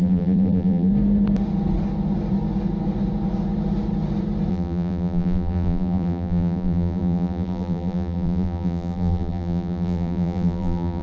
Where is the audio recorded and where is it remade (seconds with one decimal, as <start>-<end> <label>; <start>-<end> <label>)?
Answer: 0.0-0.9 remade; 0.9-4.5 recorded; 4.5-11.0 remade

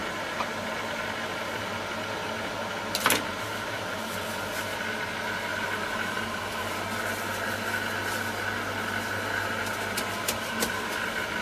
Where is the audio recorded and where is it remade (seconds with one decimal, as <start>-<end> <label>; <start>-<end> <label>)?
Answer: 0.0-1.0 remade; 1.0-3.3 recorded; 3.3-4.2 remade; 4.2-5.5 recorded; 5.5-6.8 remade; 6.8-11.4 recorded